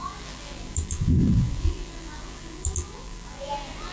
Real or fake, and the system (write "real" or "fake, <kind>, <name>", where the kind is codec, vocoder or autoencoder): fake, vocoder, BigVGAN v2